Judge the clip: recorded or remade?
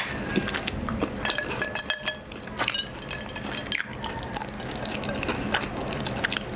recorded